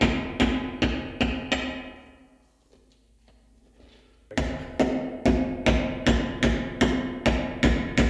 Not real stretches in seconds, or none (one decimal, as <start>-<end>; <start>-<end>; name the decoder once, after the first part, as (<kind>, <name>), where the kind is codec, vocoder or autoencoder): none